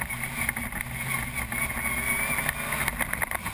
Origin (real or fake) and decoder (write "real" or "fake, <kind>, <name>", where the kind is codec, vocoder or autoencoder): real